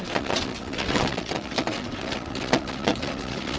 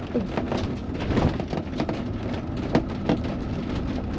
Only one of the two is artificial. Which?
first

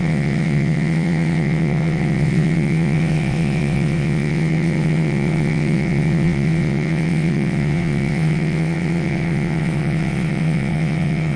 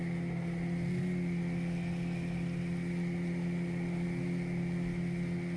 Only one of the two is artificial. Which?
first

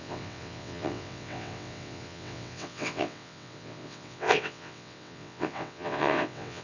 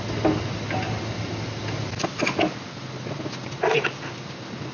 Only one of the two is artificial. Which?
first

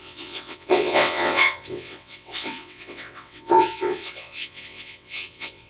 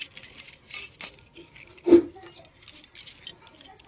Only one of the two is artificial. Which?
first